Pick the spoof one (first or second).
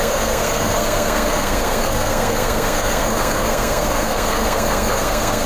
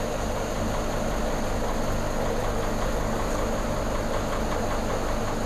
first